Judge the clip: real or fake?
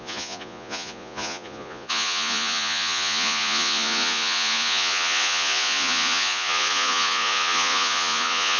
fake